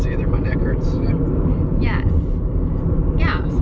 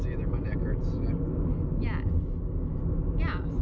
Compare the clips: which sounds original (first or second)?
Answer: second